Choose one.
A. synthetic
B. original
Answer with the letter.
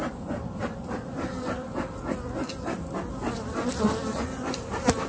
B